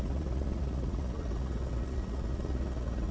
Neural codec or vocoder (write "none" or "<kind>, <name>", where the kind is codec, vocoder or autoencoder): vocoder, Vocos